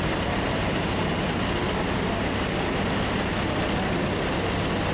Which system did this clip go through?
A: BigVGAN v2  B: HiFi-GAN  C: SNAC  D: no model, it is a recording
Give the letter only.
D